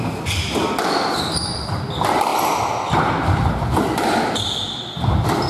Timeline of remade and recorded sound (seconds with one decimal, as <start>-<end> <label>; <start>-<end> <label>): 0.0-5.5 recorded